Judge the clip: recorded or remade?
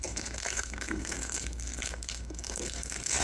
remade